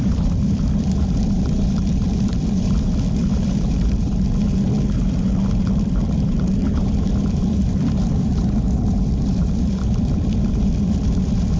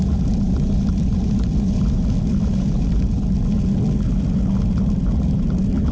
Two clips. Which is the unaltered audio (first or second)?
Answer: second